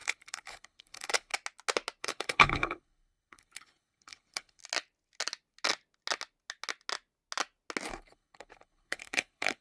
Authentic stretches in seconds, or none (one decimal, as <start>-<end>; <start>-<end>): 1.3-2.0; 4.6-7.9